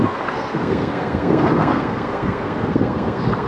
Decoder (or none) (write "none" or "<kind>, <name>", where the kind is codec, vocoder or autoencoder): codec, SNAC